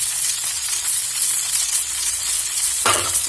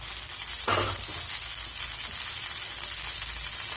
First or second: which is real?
second